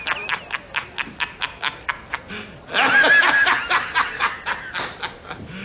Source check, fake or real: real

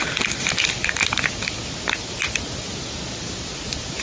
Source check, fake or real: real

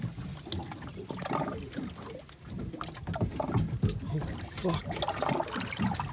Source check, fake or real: real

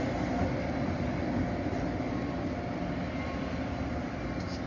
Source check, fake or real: real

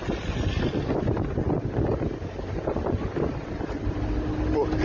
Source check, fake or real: real